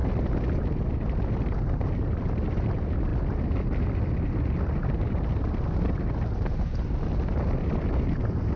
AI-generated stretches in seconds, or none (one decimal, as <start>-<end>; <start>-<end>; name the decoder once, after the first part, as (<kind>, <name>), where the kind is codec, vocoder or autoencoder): 3.1-4.1 (vocoder, BigVGAN v2)